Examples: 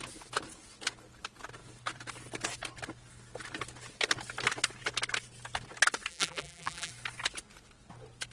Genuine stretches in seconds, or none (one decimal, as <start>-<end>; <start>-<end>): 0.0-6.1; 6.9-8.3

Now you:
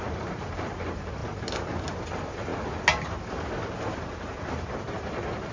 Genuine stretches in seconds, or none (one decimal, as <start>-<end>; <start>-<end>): 1.2-2.0; 2.5-4.4

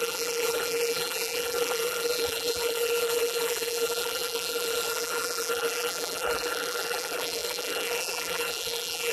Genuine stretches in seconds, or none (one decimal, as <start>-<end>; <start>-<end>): none

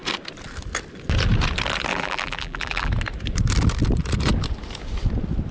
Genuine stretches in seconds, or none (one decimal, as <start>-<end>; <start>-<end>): 0.0-1.9; 2.9-5.5

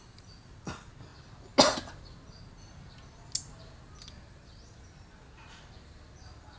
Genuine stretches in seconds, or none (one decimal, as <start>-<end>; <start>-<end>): 0.0-6.6